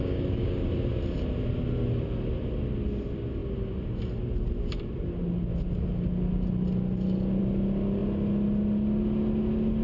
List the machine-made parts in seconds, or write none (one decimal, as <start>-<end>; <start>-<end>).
0.0-0.6